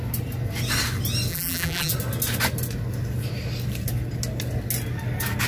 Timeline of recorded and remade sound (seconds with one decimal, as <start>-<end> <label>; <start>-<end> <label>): 0.0-1.3 recorded; 1.3-1.9 remade; 1.9-5.5 recorded